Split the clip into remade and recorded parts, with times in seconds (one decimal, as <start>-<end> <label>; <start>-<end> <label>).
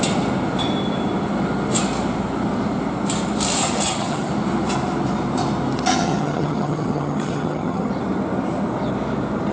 0.0-3.6 recorded; 3.6-4.3 remade; 4.3-5.9 recorded; 5.9-7.9 remade; 7.9-9.5 recorded